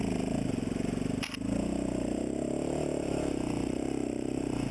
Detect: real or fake real